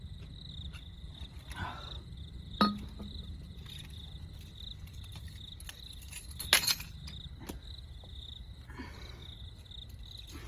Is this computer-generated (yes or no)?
no